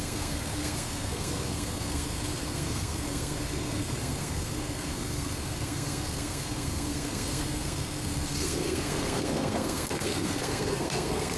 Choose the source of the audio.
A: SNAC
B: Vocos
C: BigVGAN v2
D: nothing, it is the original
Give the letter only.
A